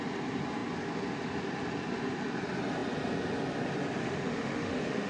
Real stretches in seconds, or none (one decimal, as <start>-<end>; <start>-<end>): 0.0-4.0